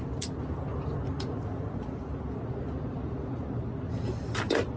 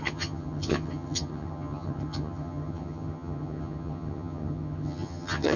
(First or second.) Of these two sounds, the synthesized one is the second